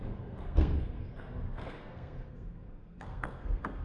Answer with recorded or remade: remade